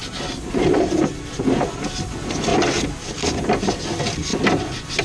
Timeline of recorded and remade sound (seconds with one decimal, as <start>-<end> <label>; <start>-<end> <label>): 0.0-5.0 recorded